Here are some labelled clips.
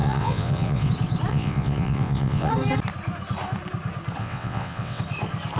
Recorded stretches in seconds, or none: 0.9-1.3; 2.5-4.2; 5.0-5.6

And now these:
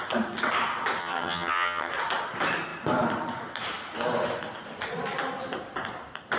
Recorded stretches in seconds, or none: 0.0-1.0; 1.9-6.4

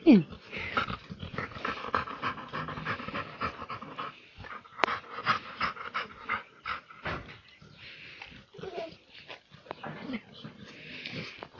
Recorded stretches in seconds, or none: 0.0-11.6

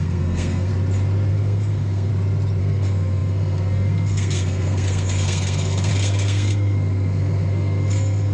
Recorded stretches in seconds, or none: 0.7-1.3; 2.1-2.6

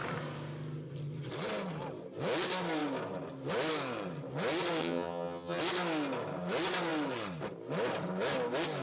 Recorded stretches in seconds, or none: 0.0-4.8; 5.6-8.8

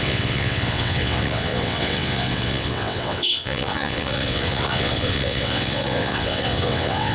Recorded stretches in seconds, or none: none

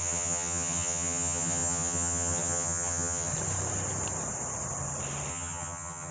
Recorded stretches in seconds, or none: 3.3-5.3

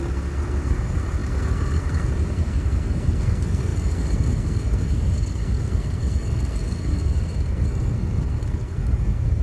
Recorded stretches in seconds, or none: none